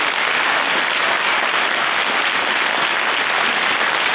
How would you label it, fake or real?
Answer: real